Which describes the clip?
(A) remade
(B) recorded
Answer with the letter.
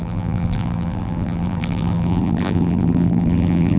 A